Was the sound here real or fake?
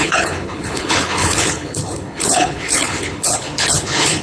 fake